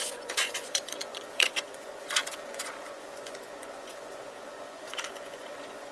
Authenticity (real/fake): fake